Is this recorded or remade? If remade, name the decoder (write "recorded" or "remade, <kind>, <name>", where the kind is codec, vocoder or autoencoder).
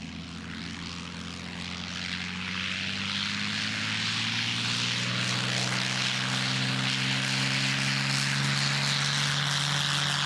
recorded